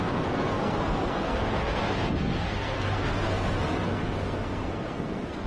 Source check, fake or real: fake